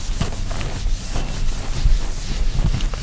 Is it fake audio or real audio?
real